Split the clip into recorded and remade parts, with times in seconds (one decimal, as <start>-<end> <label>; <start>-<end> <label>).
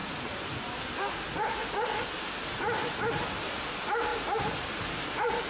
0.0-3.3 recorded; 3.3-5.5 remade